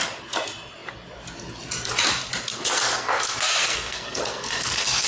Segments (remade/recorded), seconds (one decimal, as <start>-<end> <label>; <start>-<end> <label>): 0.0-2.5 recorded; 2.5-5.1 remade